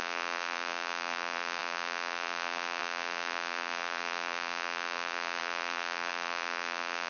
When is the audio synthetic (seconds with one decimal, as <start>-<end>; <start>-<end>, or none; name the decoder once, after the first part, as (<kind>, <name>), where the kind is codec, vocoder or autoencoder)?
0.0-7.1 (vocoder, BigVGAN v2)

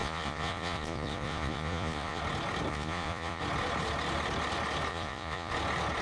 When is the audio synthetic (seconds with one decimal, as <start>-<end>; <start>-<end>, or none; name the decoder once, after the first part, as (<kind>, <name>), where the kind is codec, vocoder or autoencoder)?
0.0-2.2 (vocoder, Vocos); 2.7-3.4; 4.9-5.5

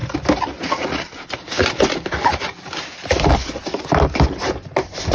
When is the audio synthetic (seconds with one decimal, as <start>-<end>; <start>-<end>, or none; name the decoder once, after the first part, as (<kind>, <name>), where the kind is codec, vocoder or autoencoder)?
none